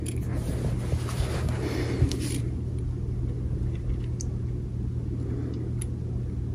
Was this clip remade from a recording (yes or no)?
no